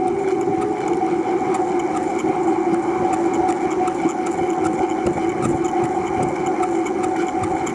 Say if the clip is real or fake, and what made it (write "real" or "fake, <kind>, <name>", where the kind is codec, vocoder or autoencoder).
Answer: real